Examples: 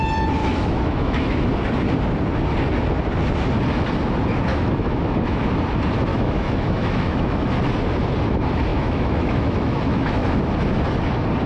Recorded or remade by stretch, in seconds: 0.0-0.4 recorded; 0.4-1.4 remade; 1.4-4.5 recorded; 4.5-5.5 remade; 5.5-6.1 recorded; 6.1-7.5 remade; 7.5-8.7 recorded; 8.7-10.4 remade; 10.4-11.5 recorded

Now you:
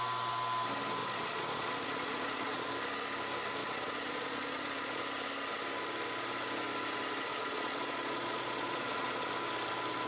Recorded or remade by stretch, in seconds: 0.0-1.0 recorded; 1.0-2.7 remade; 2.7-3.6 recorded; 3.6-5.0 remade; 5.0-7.3 recorded; 7.3-9.3 remade; 9.3-10.1 recorded

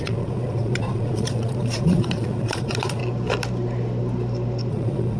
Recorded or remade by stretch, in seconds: 0.0-3.0 remade; 3.0-4.7 recorded; 4.7-5.2 remade

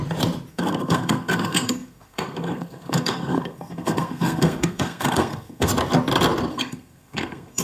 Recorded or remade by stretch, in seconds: 0.0-0.5 recorded; 0.5-5.7 remade; 5.7-6.5 recorded; 6.5-7.6 remade